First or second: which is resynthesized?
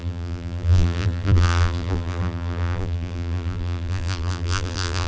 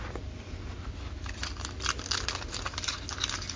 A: first